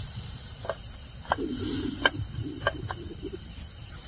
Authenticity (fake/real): real